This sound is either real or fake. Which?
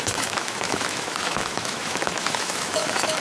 fake